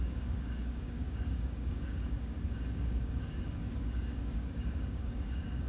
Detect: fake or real fake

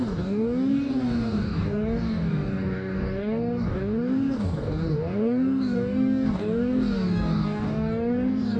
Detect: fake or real fake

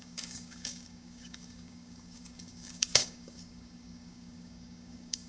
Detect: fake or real fake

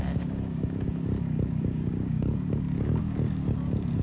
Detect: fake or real fake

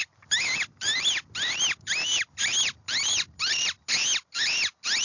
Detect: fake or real real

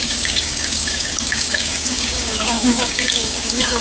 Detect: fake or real fake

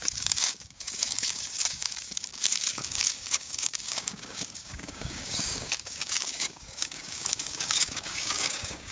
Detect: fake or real fake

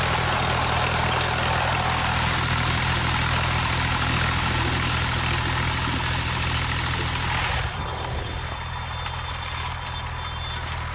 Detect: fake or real real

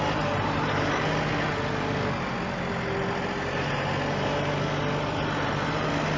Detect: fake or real real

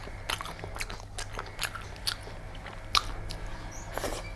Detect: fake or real real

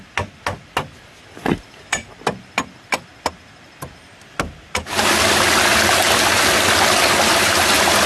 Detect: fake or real real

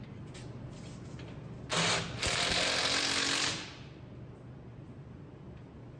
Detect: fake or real real